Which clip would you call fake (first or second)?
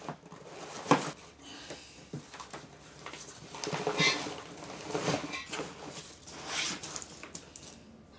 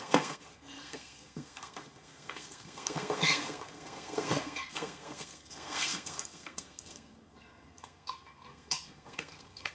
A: second